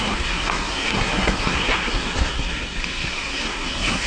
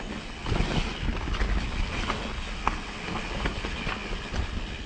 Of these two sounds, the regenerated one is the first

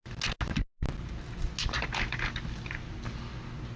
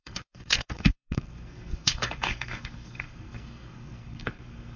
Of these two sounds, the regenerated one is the second